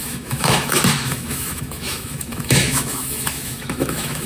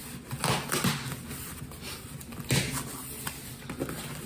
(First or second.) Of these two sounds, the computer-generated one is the first